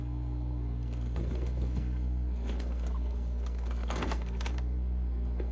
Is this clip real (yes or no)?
no